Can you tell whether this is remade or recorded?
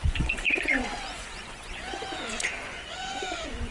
remade